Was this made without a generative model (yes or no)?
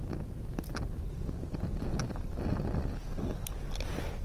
yes